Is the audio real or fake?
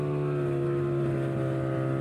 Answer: real